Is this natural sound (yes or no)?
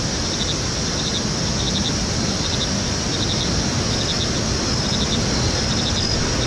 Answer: yes